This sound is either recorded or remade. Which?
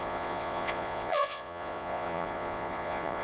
remade